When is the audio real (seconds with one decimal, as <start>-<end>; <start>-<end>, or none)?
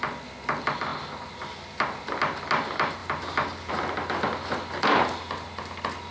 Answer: 0.0-6.1